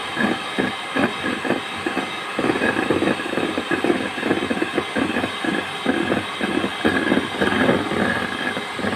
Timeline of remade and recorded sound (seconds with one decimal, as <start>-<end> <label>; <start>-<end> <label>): 0.0-4.8 remade; 4.8-9.0 recorded